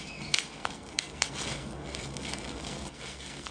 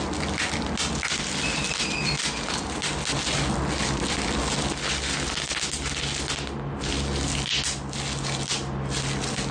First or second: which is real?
second